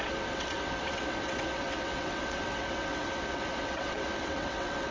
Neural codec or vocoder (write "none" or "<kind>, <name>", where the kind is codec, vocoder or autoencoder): vocoder, WaveNeXt